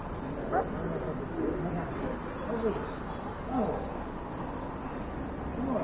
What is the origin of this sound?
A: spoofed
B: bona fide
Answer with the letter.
B